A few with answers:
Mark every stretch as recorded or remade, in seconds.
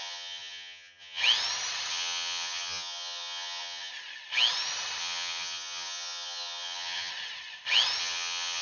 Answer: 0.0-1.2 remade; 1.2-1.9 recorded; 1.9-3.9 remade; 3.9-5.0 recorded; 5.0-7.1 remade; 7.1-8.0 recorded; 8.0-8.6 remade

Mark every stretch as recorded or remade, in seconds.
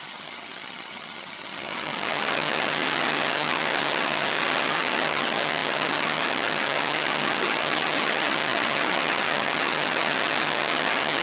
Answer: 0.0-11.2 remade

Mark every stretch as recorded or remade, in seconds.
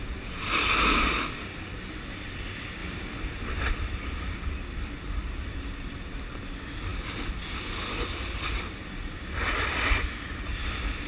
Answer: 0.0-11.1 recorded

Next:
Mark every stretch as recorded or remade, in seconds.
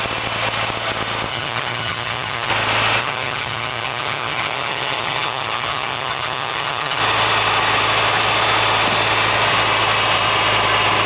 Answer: 0.0-1.3 recorded; 1.3-2.5 remade; 2.5-3.0 recorded; 3.0-7.0 remade; 7.0-11.1 recorded